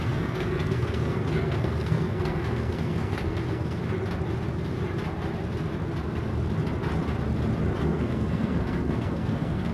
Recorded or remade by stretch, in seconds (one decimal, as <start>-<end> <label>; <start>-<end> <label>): 0.0-3.8 remade; 3.8-7.8 recorded; 7.8-9.7 remade